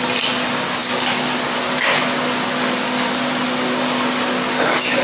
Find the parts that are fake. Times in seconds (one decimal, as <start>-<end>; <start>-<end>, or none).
none